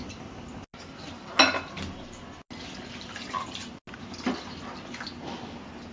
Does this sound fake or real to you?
real